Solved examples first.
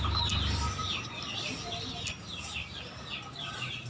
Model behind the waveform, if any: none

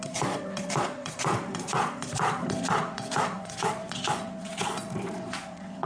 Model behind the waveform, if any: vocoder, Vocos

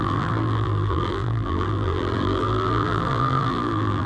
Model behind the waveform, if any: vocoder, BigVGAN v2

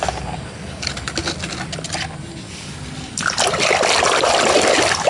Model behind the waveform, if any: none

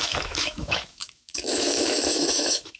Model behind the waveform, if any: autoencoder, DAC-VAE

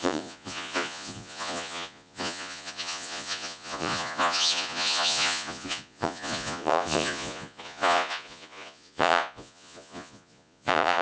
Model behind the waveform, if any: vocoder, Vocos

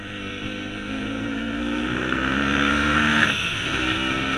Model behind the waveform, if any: codec, SNAC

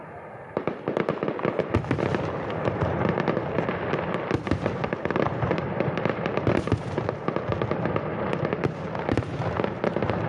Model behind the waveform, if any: vocoder, BigVGAN v2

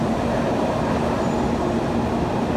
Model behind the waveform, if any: none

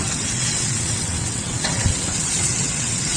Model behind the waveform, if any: vocoder, WaveNeXt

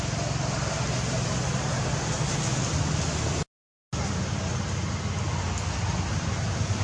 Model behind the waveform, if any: none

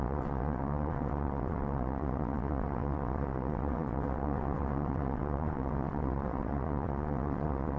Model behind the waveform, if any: vocoder, WaveNeXt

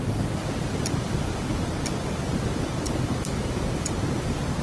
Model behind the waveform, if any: none